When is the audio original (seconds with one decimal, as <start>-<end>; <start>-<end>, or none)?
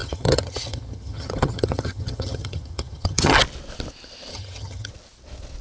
3.4-4.3; 4.9-5.6